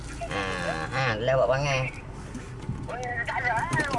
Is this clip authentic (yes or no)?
yes